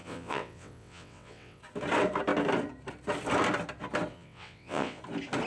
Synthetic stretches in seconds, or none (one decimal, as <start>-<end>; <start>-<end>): 0.0-1.6; 4.1-5.0